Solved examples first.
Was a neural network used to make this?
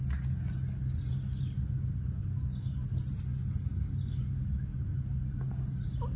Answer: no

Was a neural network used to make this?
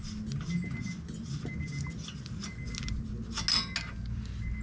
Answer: no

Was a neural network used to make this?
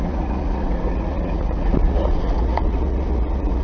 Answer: yes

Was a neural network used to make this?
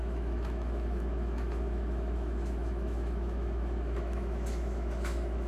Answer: yes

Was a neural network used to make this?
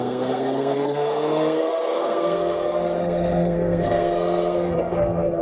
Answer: yes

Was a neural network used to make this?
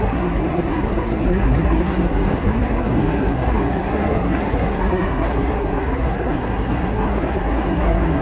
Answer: yes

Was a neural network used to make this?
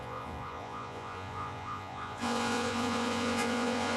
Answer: yes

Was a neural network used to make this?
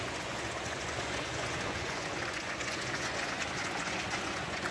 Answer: yes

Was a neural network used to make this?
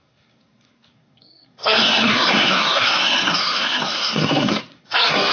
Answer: yes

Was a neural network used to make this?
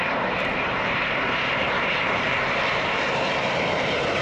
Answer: yes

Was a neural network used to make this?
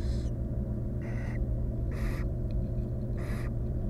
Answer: yes